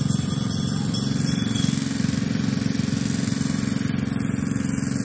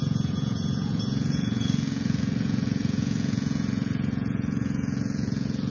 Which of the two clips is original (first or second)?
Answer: first